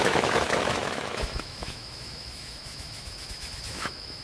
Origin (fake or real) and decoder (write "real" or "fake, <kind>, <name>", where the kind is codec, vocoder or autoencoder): fake, autoencoder, DAC-VAE